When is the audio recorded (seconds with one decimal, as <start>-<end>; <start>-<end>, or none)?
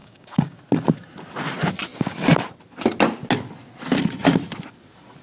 0.6-5.2